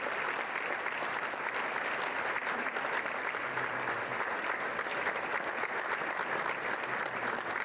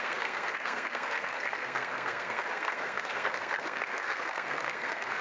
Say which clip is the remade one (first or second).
second